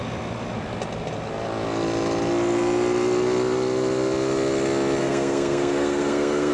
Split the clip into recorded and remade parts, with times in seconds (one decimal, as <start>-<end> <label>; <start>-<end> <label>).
0.0-5.0 recorded; 5.0-6.5 remade